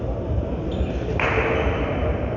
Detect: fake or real fake